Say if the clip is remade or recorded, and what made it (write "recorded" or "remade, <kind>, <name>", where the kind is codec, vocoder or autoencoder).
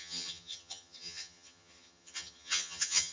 remade, vocoder, HiFi-GAN